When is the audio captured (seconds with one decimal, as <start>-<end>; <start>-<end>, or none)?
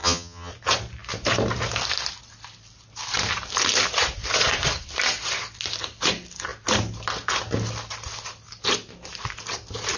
0.5-10.0